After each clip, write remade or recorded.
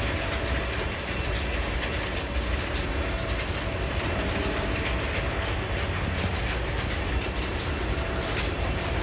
recorded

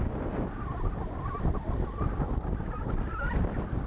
recorded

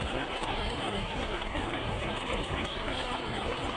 remade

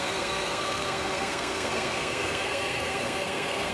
remade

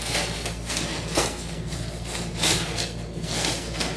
remade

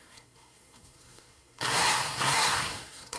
remade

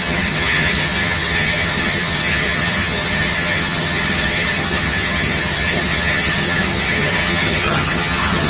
remade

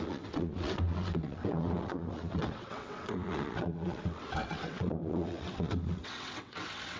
remade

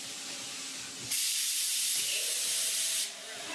recorded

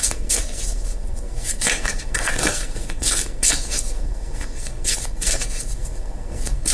remade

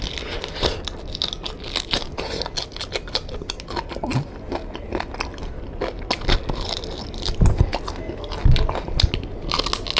recorded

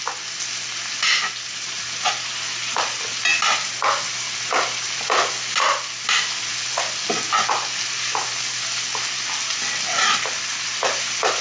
recorded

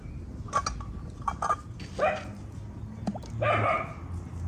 recorded